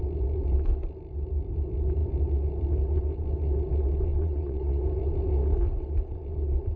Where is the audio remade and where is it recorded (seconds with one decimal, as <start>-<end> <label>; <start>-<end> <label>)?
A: 0.0-4.1 recorded; 4.1-4.8 remade; 4.8-6.8 recorded